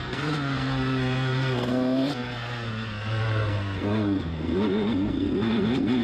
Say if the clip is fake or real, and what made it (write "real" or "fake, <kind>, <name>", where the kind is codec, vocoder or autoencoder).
fake, codec, SNAC